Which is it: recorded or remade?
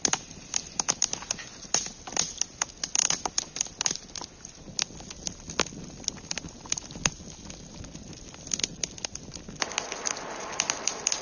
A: recorded